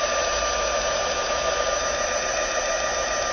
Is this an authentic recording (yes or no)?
yes